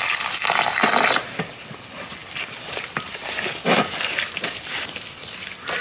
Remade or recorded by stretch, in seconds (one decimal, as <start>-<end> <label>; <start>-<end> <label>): 0.0-2.2 recorded; 2.2-5.8 remade